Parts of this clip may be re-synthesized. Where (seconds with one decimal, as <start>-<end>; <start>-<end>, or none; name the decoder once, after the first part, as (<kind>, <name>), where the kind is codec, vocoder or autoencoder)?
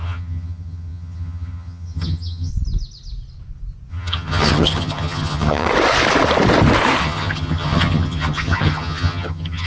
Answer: 0.0-2.5 (vocoder, HiFi-GAN); 3.9-5.7; 7.0-9.7